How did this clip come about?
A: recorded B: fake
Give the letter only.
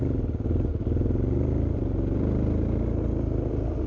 A